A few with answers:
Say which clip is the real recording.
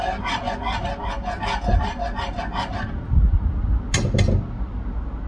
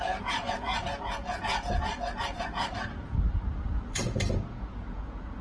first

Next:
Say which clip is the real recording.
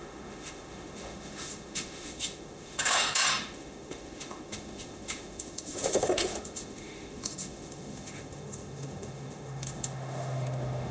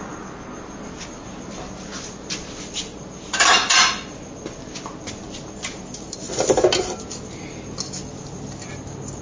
second